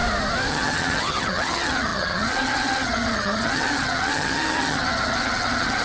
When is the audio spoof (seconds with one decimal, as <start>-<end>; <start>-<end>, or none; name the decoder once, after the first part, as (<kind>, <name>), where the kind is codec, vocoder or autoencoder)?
0.5-5.8 (vocoder, HiFi-GAN)